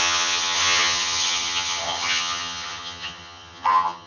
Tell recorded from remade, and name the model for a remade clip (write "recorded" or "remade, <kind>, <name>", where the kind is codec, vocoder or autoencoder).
remade, vocoder, HiFi-GAN